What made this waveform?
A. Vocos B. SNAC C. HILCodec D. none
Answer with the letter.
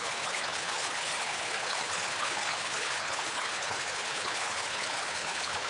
C